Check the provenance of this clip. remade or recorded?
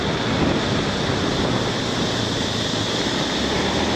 recorded